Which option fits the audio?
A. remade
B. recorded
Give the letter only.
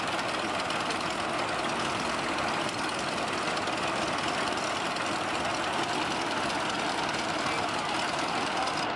B